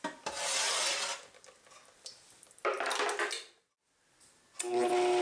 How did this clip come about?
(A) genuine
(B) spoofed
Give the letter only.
A